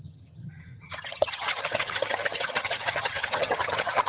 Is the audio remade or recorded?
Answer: remade